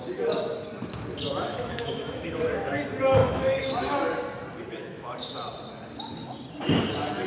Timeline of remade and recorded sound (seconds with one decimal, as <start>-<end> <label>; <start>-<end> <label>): 0.0-1.5 recorded; 1.5-2.8 remade; 2.8-3.2 recorded; 3.2-4.0 remade; 4.0-4.8 recorded; 4.8-5.3 remade; 5.3-7.3 recorded